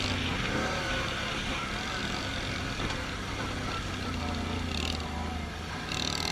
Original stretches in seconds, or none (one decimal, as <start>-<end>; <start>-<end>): 0.0-2.0; 3.3-6.3